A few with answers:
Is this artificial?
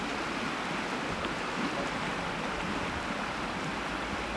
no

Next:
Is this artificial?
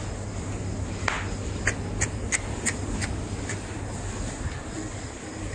no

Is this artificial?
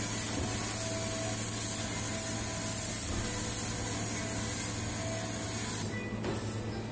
no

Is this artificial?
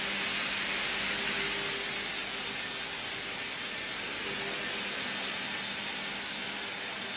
no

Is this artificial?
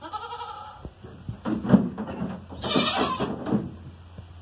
no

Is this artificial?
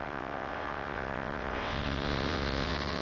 yes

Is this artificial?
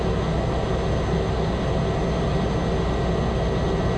no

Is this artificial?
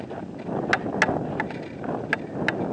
no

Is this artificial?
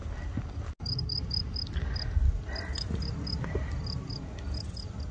no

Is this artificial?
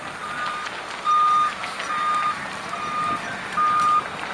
no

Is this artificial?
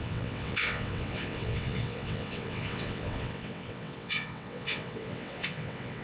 yes